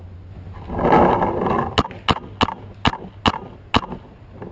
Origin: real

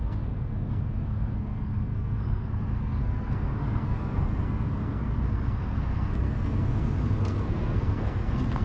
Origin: fake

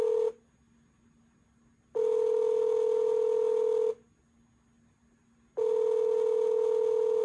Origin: real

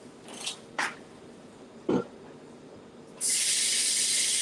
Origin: real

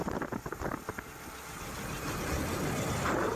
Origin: real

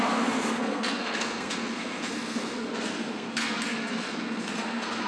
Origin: fake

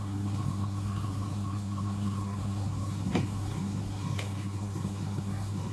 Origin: fake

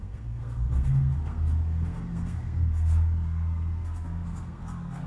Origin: fake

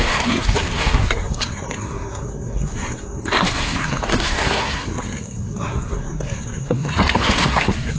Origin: fake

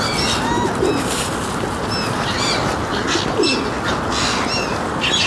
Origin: real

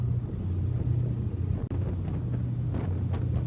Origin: real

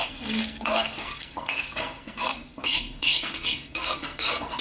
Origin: fake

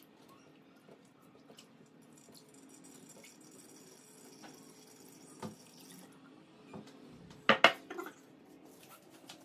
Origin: real